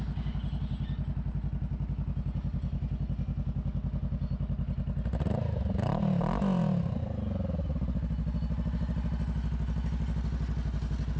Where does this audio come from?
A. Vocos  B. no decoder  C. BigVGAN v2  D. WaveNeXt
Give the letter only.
B